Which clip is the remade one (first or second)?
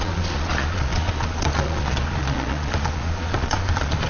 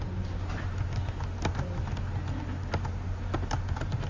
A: first